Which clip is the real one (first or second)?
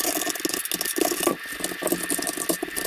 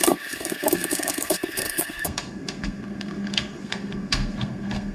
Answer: first